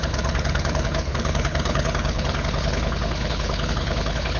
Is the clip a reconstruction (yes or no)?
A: yes